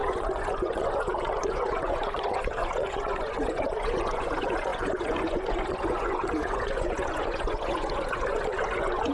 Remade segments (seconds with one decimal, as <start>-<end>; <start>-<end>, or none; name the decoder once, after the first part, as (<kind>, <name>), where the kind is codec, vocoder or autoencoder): 0.0-9.1 (vocoder, Vocos)